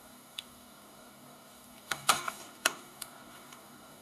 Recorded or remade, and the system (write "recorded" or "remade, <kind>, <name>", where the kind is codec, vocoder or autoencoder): remade, codec, DAC